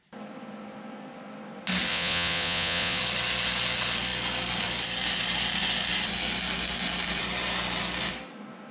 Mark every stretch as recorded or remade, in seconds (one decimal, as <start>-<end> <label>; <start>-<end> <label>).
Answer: 0.0-1.9 recorded; 1.9-3.0 remade; 3.0-8.7 recorded